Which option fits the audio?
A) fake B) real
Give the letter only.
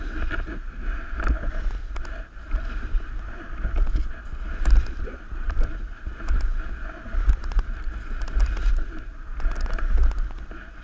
B